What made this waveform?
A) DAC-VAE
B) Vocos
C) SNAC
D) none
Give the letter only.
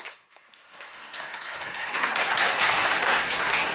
C